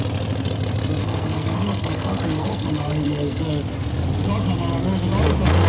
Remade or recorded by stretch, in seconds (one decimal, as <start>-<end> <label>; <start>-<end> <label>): 0.0-1.0 recorded; 1.0-3.4 remade; 3.4-5.7 recorded

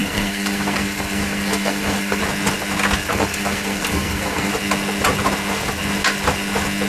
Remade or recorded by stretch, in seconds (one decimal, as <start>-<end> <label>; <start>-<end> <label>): 0.0-2.2 remade; 2.2-3.1 recorded; 3.1-4.5 remade; 4.5-6.9 recorded

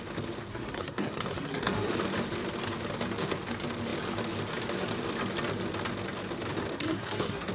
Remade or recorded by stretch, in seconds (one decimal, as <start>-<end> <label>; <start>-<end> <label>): 0.0-0.5 recorded; 0.5-1.9 remade; 1.9-6.7 recorded; 6.7-7.5 remade

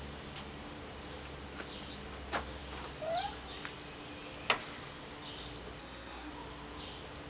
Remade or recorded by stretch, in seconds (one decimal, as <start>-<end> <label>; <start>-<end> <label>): 0.0-5.8 recorded; 5.8-6.3 remade; 6.3-7.3 recorded